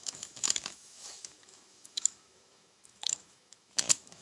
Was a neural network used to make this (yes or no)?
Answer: yes